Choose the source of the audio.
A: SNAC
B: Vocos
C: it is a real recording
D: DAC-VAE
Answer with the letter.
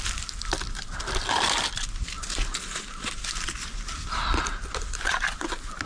C